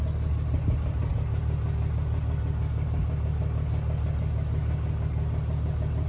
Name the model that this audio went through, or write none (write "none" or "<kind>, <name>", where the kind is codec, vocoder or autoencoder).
none